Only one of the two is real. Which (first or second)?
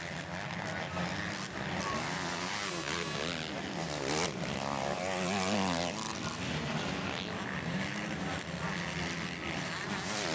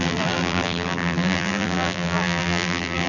first